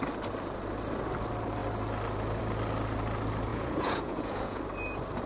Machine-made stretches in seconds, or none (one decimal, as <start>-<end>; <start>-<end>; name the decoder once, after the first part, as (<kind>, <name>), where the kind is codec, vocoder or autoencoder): 3.5-4.6 (vocoder, Vocos)